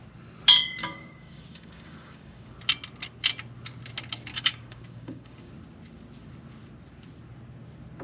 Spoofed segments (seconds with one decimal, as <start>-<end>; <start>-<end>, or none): 0.8-2.5; 4.3-5.5